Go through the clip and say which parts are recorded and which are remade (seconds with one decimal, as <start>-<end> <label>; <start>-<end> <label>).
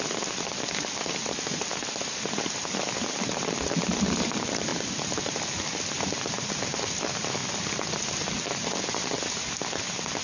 0.0-10.2 recorded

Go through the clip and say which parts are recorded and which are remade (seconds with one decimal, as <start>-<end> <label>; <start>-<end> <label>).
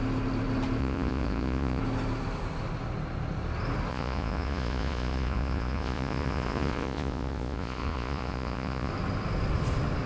0.0-0.8 recorded; 0.8-1.8 remade; 1.8-3.9 recorded; 3.9-8.9 remade; 8.9-10.1 recorded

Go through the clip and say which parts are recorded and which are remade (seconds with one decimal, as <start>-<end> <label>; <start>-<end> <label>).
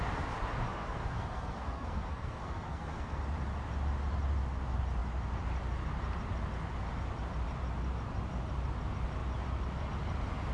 0.0-0.7 recorded; 0.7-3.2 remade; 3.2-10.5 recorded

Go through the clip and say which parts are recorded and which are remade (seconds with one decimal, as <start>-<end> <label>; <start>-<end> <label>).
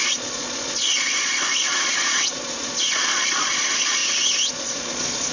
0.0-4.0 remade; 4.0-4.5 recorded; 4.5-5.3 remade